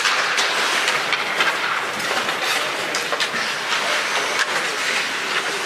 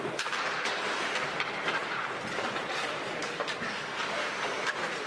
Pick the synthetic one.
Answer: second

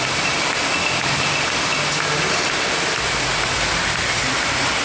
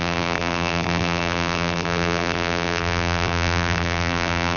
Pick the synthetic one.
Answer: second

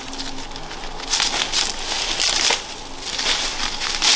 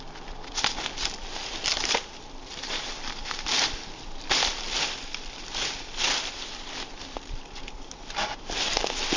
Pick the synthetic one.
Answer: second